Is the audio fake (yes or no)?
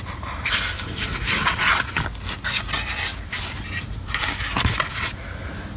no